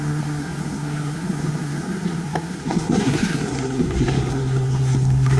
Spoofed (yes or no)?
yes